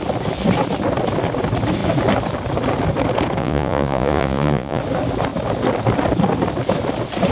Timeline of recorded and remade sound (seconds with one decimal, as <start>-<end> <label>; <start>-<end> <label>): 0.0-3.4 recorded; 3.4-4.8 remade; 4.8-7.3 recorded